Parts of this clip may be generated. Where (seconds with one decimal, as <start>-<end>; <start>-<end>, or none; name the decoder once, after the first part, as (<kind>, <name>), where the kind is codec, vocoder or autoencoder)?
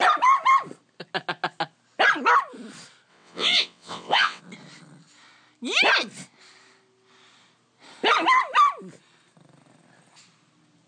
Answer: 3.1-4.4 (vocoder, WaveNeXt)